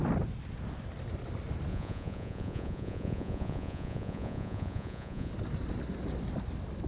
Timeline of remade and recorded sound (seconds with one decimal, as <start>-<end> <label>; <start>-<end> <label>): 0.0-1.7 recorded; 1.7-5.3 remade; 5.3-6.9 recorded